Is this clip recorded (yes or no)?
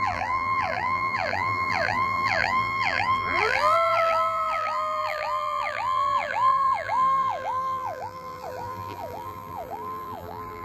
no